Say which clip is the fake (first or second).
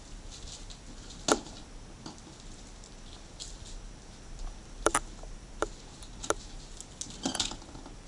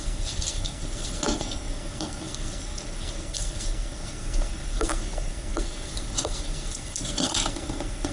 second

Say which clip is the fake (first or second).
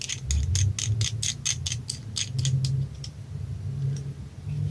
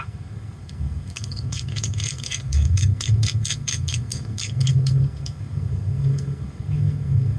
second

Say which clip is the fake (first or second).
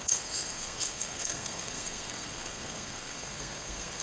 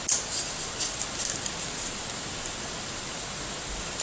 first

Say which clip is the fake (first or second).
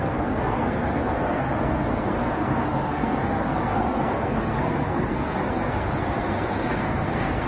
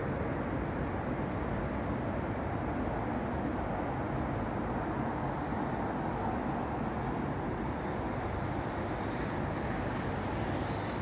first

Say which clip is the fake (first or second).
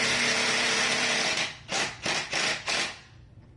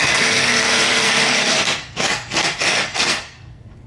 second